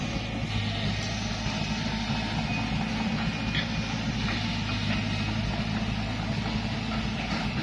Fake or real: real